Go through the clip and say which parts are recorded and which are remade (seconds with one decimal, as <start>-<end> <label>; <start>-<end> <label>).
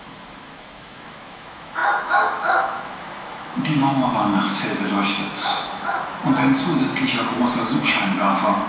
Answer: 0.0-6.2 remade; 6.2-7.8 recorded; 7.8-8.7 remade